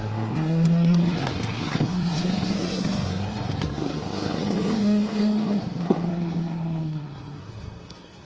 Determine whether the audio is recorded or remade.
remade